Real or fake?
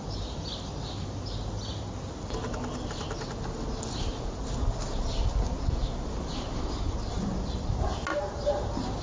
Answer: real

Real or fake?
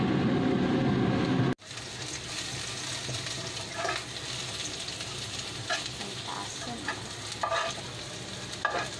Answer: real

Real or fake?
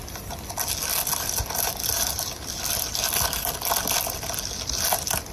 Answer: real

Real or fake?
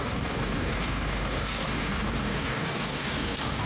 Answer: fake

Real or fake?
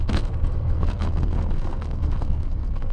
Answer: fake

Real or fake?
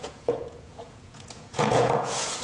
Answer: fake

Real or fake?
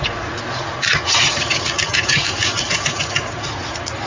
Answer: fake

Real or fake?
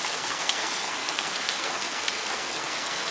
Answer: fake